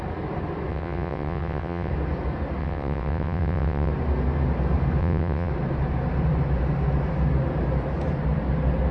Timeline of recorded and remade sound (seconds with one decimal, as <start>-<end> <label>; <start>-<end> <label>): 0.0-0.7 recorded; 0.7-1.9 remade; 1.9-2.6 recorded; 2.6-3.9 remade; 3.9-5.0 recorded; 5.0-5.5 remade; 5.5-8.9 recorded